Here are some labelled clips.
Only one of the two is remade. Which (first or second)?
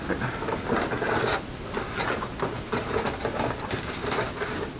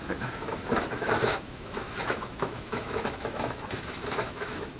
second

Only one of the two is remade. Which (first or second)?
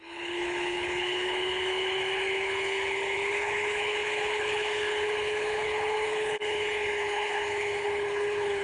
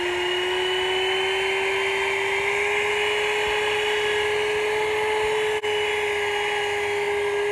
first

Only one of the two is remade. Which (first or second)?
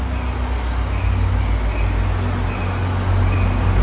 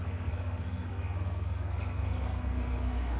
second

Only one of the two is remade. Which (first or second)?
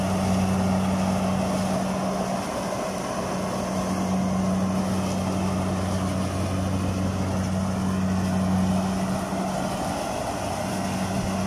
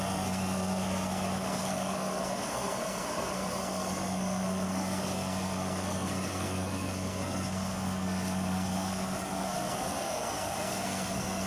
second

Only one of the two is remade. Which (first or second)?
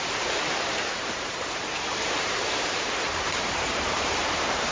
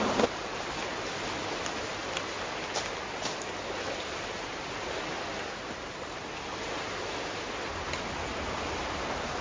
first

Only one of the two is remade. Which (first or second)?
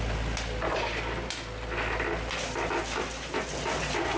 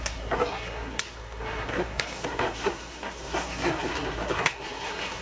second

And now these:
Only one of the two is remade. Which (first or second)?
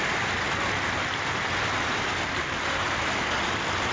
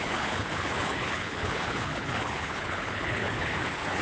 second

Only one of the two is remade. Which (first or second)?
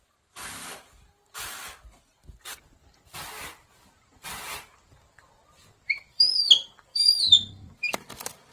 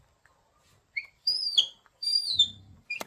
first